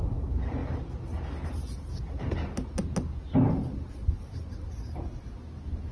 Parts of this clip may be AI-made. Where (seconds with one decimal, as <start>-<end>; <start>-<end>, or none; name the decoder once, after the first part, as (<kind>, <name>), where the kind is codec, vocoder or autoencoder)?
none